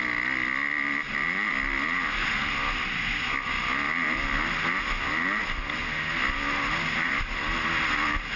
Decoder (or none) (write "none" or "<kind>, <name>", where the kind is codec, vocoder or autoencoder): none